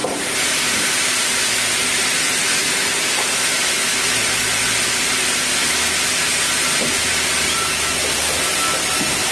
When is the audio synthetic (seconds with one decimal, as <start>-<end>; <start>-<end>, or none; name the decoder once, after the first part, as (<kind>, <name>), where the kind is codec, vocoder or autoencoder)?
none